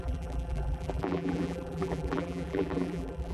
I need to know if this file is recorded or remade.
remade